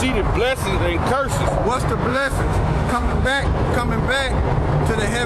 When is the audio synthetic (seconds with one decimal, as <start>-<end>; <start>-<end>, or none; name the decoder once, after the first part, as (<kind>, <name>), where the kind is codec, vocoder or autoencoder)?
2.1-3.4 (autoencoder, DAC-VAE)